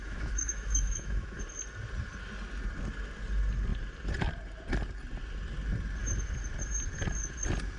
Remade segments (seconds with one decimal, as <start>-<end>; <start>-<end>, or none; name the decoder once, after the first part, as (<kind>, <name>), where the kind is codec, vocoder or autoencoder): 0.0-1.4 (autoencoder, DAC-VAE)